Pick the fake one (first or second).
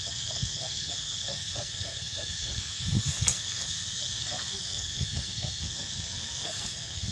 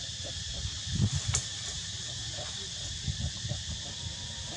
first